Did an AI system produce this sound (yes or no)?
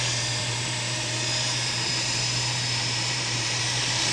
yes